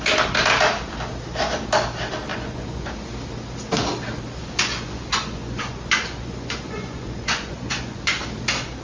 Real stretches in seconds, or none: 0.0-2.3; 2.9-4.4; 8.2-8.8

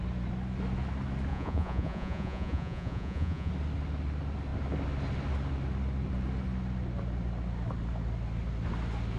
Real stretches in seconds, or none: 0.0-1.3; 3.5-9.2

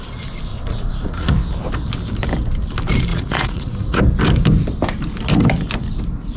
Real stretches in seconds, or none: 0.0-0.5; 1.4-3.1; 4.0-6.4

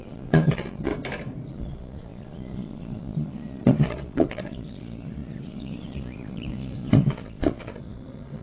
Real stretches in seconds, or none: 0.9-1.5

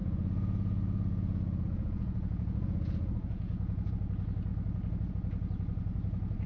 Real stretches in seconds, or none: 3.9-6.5

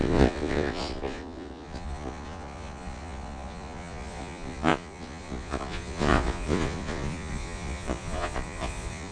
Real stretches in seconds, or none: none

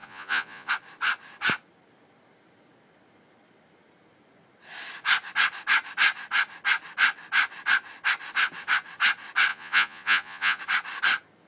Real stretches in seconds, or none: 0.7-9.5; 10.6-11.5

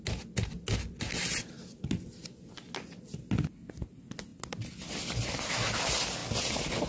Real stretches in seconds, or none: 0.0-6.9